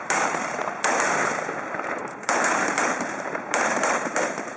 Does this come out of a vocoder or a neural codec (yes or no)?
yes